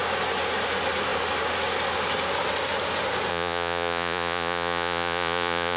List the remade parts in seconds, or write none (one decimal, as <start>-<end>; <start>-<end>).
3.3-5.8